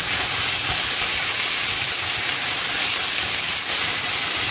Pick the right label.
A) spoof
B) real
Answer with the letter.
B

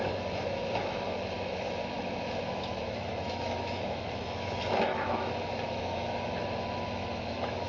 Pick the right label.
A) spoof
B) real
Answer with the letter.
A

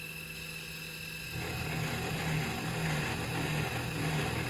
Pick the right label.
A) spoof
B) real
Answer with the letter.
B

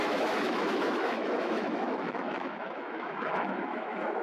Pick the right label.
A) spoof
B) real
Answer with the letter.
A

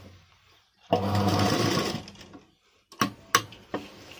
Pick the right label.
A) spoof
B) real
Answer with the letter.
B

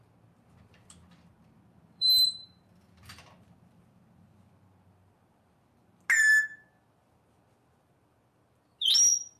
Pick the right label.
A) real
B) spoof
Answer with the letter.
A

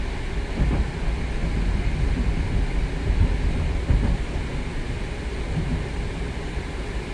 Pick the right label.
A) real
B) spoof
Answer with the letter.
A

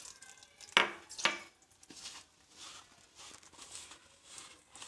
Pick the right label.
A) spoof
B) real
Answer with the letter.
B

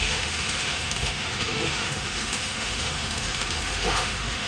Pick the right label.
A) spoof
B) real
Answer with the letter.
A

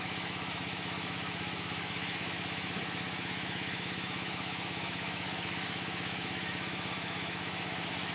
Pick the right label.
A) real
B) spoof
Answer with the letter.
B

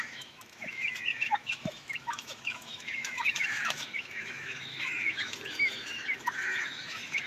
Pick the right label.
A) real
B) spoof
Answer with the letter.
B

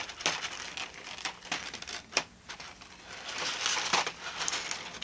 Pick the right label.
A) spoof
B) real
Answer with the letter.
B